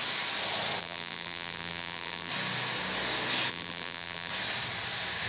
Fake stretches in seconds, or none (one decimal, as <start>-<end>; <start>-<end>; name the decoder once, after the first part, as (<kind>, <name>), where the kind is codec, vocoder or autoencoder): 0.8-2.3 (vocoder, BigVGAN v2); 3.5-4.3